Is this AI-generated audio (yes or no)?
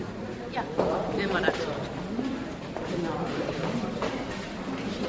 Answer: no